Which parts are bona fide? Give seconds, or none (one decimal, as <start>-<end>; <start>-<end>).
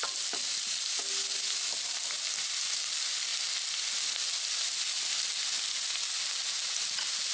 0.0-7.3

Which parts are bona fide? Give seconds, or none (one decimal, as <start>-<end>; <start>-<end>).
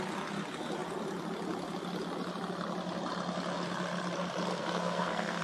0.0-4.5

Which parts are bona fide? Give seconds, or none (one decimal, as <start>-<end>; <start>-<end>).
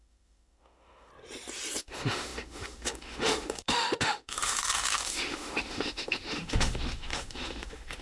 1.1-1.8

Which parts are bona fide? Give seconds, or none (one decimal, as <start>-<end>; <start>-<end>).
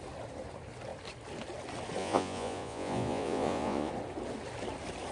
0.0-2.0; 3.9-5.1